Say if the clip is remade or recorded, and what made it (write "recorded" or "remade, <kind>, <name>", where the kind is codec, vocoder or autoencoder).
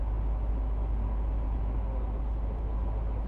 recorded